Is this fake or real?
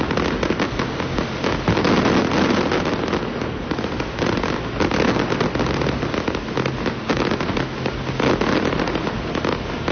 real